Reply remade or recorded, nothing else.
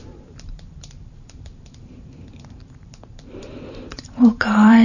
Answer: remade